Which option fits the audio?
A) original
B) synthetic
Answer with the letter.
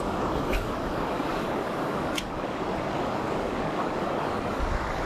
B